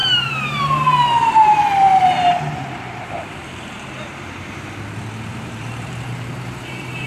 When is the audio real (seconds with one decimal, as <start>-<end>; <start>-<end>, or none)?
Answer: 0.6-1.5; 4.7-5.3